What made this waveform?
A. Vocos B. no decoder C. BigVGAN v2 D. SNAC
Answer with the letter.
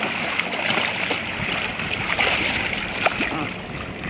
C